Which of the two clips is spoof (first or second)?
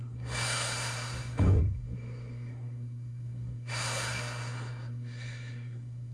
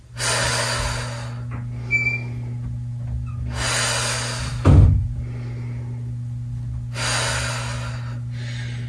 first